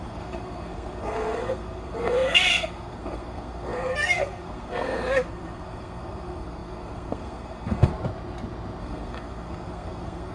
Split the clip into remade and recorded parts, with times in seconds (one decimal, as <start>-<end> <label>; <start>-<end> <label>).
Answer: 0.0-7.9 remade; 7.9-8.8 recorded; 8.8-10.3 remade